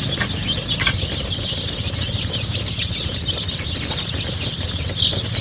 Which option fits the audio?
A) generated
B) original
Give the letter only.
B